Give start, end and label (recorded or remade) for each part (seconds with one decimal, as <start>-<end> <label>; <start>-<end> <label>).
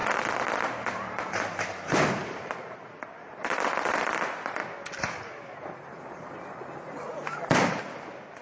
0.0-2.5 remade; 2.5-8.4 recorded